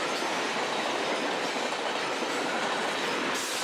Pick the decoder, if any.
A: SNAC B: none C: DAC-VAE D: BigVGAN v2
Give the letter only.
B